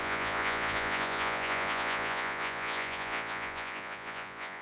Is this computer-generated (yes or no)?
yes